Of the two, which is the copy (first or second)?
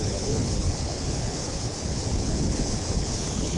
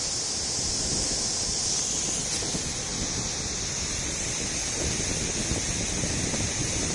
first